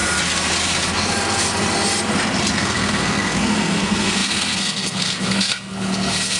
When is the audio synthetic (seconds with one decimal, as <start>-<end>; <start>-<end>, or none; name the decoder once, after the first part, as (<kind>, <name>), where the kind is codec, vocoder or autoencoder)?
2.5-6.4 (codec, SNAC)